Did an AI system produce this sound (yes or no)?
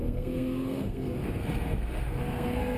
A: yes